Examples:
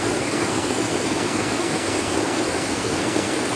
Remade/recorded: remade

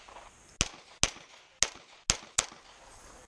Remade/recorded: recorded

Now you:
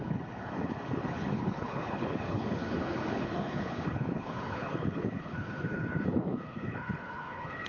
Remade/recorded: remade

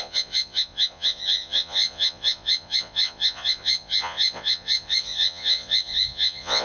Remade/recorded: remade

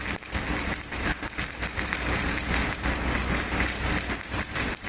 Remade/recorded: recorded